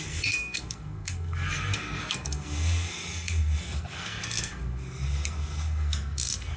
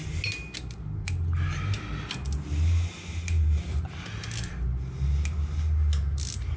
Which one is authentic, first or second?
second